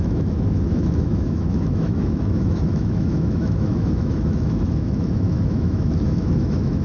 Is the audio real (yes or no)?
no